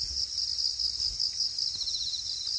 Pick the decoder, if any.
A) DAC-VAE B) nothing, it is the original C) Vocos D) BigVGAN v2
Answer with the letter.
B